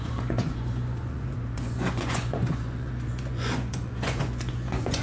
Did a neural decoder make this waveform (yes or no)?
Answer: yes